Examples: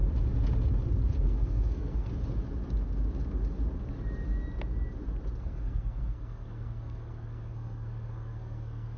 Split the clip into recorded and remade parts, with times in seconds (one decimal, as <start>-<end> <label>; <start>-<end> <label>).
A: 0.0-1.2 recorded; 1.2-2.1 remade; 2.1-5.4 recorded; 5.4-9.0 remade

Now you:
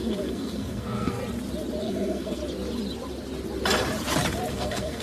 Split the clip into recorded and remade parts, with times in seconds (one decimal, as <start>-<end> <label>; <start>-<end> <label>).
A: 0.0-1.2 remade; 1.2-1.8 recorded; 1.8-2.4 remade; 2.4-4.5 recorded; 4.5-5.0 remade

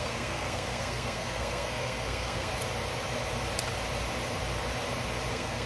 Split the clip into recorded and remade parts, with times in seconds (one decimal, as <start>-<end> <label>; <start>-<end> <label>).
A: 0.0-2.5 remade; 2.5-5.3 recorded; 5.3-5.7 remade